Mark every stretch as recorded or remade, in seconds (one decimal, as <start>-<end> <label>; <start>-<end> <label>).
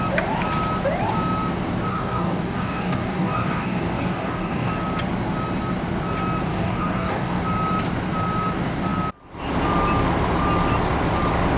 0.0-1.9 recorded; 1.9-4.7 remade; 4.7-6.5 recorded; 6.5-7.4 remade; 7.4-11.6 recorded